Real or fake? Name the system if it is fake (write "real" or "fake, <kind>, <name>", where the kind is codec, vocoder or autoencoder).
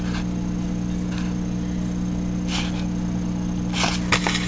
real